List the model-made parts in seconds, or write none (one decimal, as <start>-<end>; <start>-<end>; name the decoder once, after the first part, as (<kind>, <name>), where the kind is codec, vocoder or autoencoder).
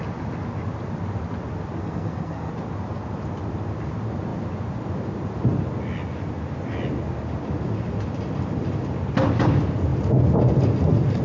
1.8-2.5 (codec, SNAC)